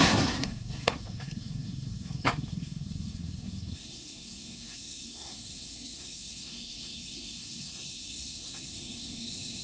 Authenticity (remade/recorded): remade